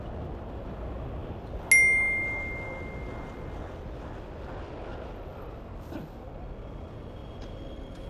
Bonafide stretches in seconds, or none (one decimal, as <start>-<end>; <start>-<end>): 0.0-8.1